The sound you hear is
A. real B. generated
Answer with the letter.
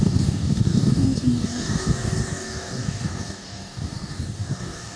B